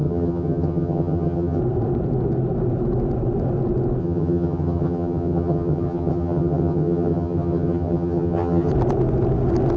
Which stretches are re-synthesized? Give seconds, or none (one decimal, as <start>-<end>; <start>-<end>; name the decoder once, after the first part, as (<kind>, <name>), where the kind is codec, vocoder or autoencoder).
0.0-1.6 (vocoder, HiFi-GAN); 4.0-8.7

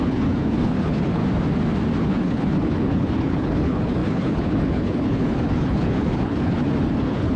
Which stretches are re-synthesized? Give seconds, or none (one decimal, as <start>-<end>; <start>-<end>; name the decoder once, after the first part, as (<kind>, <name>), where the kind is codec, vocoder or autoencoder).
0.0-1.2 (codec, HILCodec); 2.0-7.4

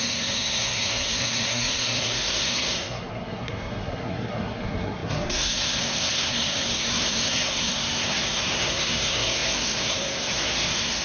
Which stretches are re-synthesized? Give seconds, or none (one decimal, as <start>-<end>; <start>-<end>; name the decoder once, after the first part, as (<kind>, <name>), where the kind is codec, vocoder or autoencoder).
0.0-11.0 (codec, SNAC)